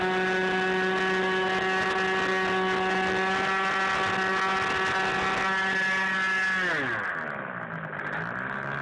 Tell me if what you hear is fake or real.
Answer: real